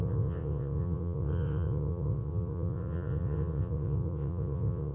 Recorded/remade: remade